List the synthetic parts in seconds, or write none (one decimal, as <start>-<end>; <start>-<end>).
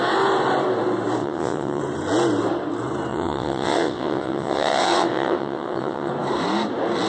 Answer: 1.2-1.8; 3.1-6.1